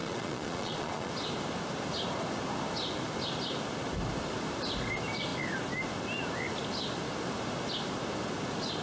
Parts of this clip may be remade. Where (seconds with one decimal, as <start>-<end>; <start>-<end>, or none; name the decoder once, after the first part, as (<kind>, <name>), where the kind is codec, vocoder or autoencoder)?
0.0-1.1 (vocoder, Vocos)

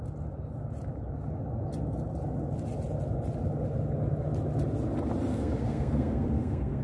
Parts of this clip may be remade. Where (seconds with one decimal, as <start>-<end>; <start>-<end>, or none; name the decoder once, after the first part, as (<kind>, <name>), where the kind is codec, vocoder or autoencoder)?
5.3-6.8 (codec, SNAC)

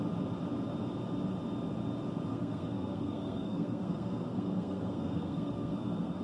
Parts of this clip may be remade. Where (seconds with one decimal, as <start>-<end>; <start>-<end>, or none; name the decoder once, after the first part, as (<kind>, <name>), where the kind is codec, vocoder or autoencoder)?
2.3-6.2 (codec, SNAC)

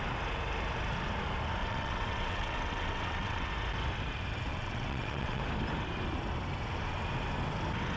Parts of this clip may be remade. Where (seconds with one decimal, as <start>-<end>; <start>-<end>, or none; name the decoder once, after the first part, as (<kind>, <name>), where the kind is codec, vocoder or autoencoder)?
1.6-3.5 (vocoder, WaveNeXt); 4.5-5.4

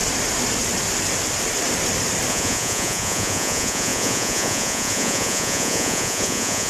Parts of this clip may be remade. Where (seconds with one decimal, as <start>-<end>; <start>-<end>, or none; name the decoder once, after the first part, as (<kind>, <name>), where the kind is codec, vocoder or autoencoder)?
2.3-6.7 (vocoder, Vocos)

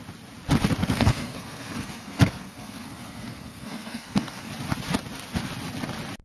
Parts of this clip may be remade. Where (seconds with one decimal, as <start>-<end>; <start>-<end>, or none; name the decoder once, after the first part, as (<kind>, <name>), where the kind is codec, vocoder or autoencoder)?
0.8-4.5 (codec, SNAC)